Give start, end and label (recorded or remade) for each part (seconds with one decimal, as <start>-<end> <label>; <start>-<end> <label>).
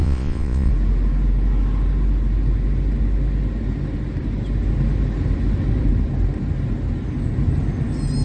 0.0-0.7 remade; 0.7-8.2 recorded